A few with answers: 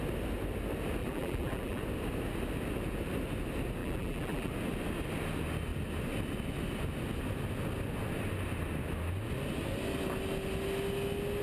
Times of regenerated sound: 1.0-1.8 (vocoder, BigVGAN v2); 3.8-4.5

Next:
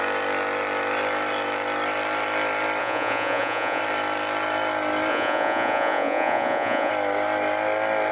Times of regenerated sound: 2.8-3.8 (vocoder, Vocos); 5.1-6.9

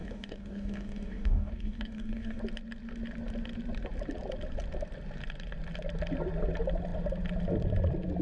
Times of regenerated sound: 0.0-2.4 (codec, DAC)

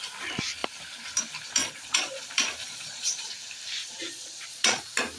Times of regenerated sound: 1.6-2.2 (vocoder, Vocos); 2.6-3.3; 3.8-4.8